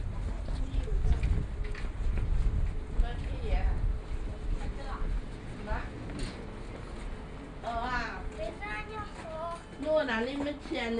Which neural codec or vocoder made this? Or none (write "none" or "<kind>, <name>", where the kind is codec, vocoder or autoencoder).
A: none